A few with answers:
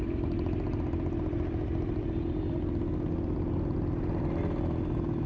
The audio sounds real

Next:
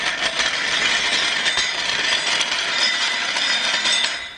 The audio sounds real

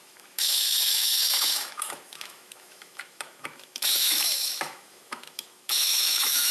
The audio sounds fake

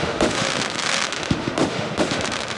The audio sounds fake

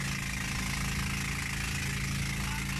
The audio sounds real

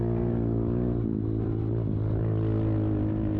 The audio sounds real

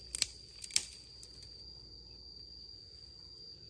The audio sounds real